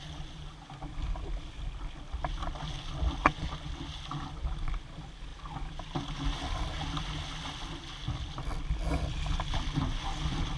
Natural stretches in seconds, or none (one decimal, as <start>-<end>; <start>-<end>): 0.0-3.2; 3.7-10.6